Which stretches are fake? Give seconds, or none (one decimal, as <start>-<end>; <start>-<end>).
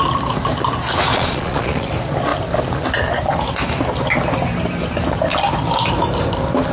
1.1-1.9